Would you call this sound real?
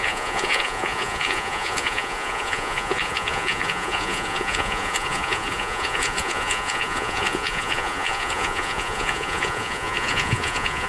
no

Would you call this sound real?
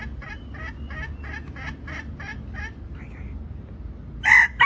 yes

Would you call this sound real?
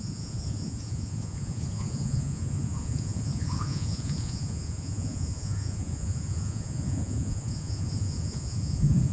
no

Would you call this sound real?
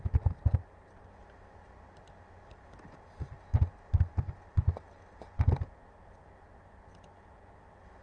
yes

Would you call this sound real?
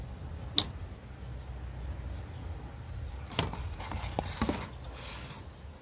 yes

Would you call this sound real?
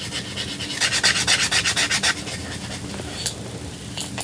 yes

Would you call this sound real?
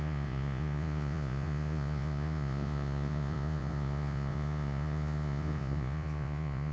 no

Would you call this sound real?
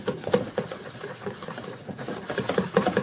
no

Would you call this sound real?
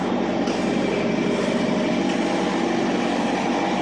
yes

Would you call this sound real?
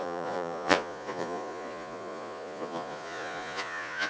no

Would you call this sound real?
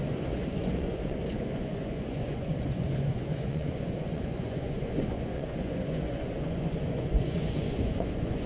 no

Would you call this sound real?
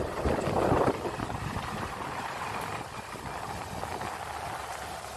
yes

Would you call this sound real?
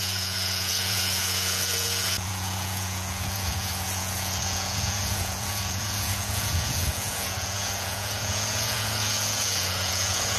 no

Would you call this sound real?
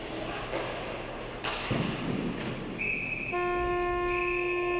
yes